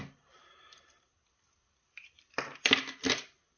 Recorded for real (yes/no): yes